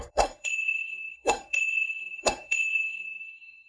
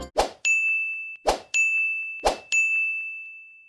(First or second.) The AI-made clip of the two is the first